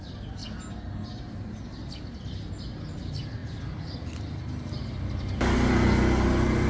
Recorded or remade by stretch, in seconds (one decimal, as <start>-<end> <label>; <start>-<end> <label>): 0.0-6.7 recorded